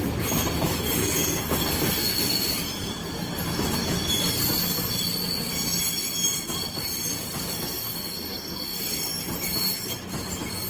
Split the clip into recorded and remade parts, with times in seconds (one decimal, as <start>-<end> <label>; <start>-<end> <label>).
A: 0.0-1.0 recorded; 1.0-2.5 remade; 2.5-7.5 recorded; 7.5-8.8 remade; 8.8-10.7 recorded